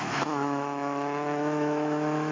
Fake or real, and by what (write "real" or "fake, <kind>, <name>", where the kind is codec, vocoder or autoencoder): fake, autoencoder, DAC-VAE